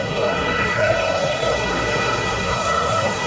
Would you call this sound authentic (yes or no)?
no